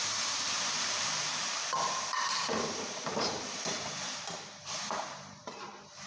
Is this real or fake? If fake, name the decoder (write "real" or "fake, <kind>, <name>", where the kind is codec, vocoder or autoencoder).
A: fake, vocoder, BigVGAN v2